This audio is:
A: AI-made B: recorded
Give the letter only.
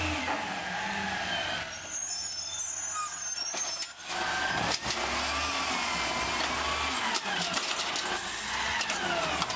B